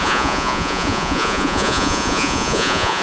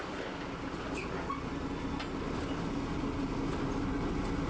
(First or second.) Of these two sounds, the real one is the second